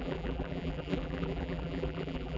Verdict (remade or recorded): remade